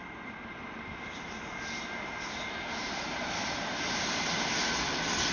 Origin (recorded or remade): recorded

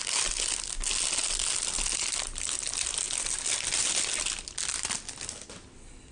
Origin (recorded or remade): recorded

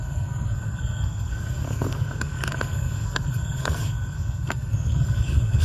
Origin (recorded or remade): remade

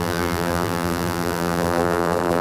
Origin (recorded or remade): remade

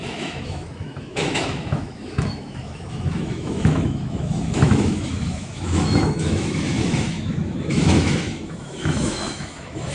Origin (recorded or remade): remade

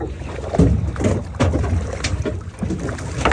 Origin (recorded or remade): recorded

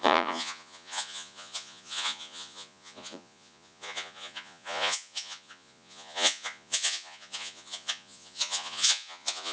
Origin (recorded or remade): remade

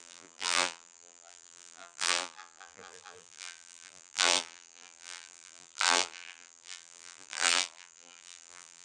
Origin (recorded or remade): remade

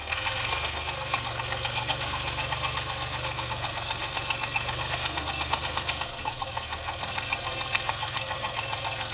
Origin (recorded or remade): remade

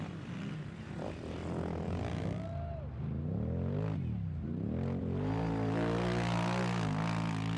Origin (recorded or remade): recorded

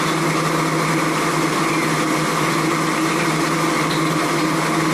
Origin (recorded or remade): recorded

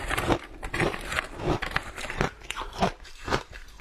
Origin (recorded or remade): remade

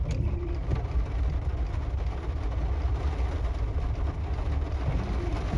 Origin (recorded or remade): recorded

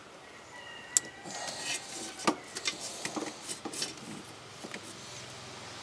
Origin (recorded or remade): recorded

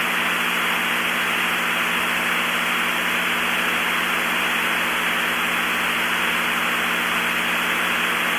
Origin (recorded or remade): recorded